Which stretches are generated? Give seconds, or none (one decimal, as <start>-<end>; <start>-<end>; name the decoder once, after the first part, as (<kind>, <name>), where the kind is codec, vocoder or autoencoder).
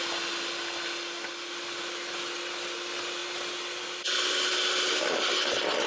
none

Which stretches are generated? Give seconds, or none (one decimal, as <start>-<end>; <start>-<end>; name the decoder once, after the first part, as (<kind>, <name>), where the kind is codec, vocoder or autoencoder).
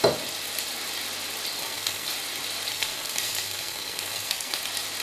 1.6-2.1 (codec, SNAC); 2.7-4.6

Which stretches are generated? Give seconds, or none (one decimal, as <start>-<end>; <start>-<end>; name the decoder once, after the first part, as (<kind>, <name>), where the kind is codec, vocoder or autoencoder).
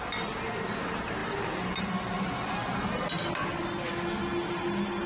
none